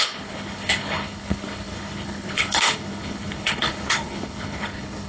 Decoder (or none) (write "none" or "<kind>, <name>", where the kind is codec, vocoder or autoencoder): codec, HILCodec